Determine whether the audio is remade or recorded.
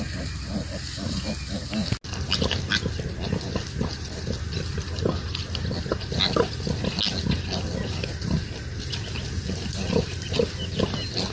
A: recorded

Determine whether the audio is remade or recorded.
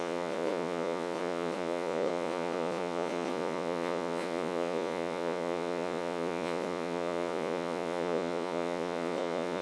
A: remade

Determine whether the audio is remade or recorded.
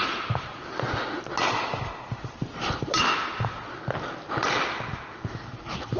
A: recorded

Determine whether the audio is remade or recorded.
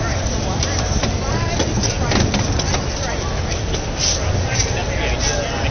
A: recorded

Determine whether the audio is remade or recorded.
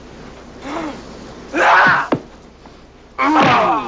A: recorded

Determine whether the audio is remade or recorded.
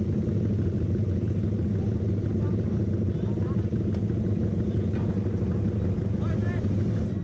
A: recorded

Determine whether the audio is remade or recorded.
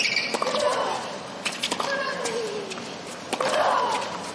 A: recorded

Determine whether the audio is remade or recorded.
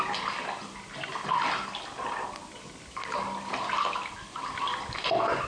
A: recorded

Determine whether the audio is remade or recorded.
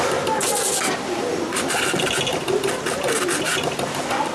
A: recorded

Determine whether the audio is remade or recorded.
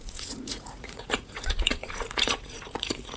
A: remade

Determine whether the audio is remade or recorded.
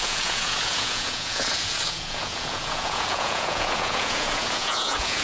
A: remade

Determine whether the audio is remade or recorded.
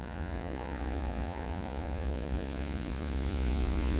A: remade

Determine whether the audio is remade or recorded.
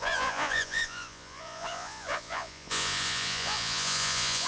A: remade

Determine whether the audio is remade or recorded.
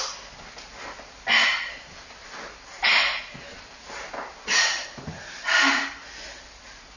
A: recorded